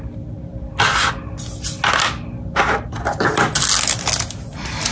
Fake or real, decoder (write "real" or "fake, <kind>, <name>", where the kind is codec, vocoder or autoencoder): real